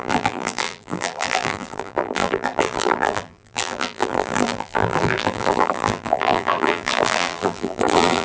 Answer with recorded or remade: remade